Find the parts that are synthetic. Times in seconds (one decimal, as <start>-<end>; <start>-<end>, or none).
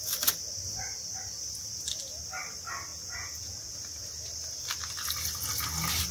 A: 2.9-3.7